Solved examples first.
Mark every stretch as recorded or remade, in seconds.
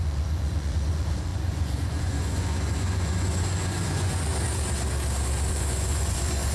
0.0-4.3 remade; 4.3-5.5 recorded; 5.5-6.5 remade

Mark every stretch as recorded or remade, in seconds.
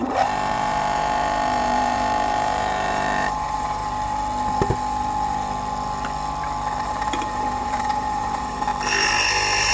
0.0-3.8 remade; 3.8-6.8 recorded; 6.8-8.7 remade; 8.7-9.7 recorded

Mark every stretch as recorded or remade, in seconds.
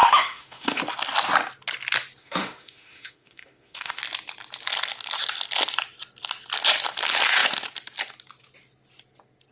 0.0-0.8 remade; 0.8-2.2 recorded; 2.2-4.0 remade; 4.0-9.5 recorded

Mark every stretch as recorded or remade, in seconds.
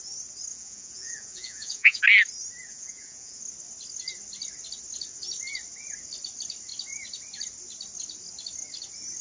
0.0-0.5 recorded; 0.5-2.0 remade; 2.0-2.7 recorded; 2.7-3.4 remade; 3.4-9.2 recorded